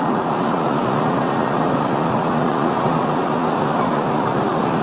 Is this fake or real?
fake